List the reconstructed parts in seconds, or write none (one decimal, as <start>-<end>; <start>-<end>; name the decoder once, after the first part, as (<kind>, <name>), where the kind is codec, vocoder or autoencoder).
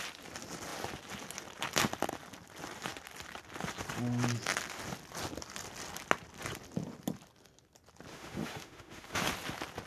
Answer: 8.1-9.2 (autoencoder, DAC-VAE)